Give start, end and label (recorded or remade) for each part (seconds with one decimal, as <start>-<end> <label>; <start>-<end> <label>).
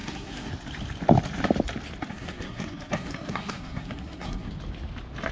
0.0-0.5 remade; 0.5-2.1 recorded; 2.1-4.5 remade; 4.5-5.3 recorded